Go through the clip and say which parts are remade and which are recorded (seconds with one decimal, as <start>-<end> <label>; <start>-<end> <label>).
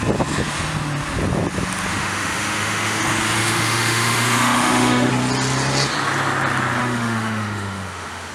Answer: 0.0-1.9 recorded; 1.9-3.0 remade; 3.0-3.4 recorded; 3.4-5.1 remade; 5.1-6.8 recorded; 6.8-8.3 remade